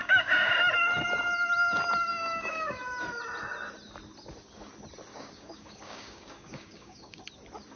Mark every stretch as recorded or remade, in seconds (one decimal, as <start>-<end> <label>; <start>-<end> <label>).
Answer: 0.0-0.5 remade; 0.5-2.1 recorded; 2.1-2.8 remade; 2.8-5.1 recorded; 5.1-7.2 remade; 7.2-7.8 recorded